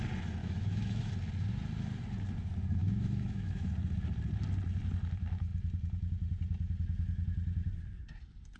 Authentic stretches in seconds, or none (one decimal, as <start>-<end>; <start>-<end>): 0.0-0.4; 1.1-2.8; 3.7-8.6